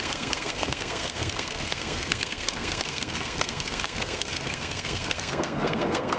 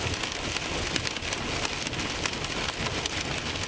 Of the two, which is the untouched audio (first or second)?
second